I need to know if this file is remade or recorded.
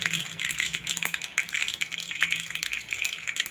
remade